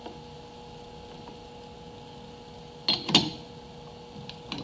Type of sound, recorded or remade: recorded